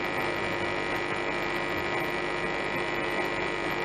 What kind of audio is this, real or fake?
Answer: real